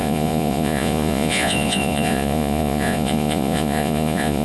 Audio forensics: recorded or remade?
remade